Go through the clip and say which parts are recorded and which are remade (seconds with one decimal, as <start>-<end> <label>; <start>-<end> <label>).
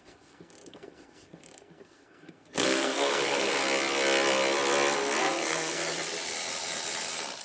0.0-3.6 remade; 3.6-5.2 recorded; 5.2-5.8 remade; 5.8-7.4 recorded